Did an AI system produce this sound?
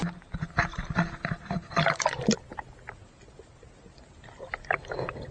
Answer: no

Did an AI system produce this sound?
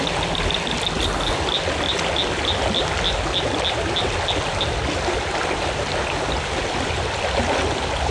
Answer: no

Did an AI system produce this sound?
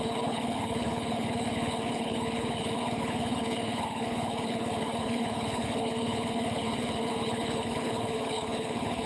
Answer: yes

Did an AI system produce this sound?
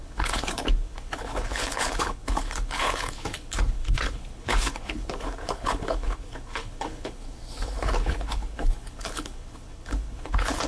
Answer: yes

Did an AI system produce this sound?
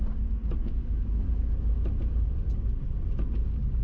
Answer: no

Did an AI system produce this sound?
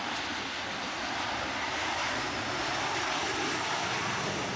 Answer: no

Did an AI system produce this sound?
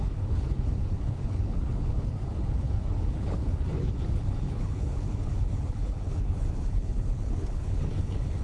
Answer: yes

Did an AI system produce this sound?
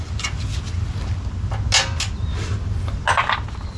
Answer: no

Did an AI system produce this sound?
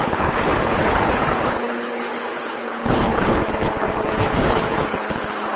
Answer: yes